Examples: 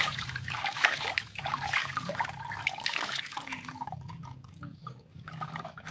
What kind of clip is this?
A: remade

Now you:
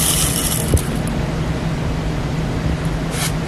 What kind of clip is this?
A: remade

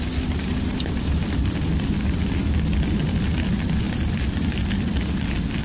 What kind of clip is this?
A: remade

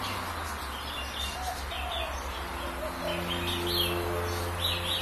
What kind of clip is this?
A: recorded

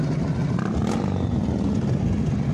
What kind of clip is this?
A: recorded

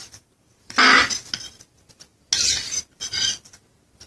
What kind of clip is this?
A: recorded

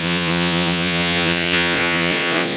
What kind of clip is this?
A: remade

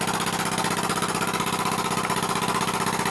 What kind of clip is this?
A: recorded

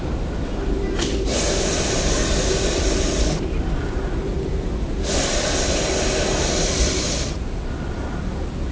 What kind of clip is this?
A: recorded